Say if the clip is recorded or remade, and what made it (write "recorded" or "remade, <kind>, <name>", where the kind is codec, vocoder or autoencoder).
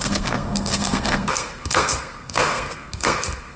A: remade, codec, SNAC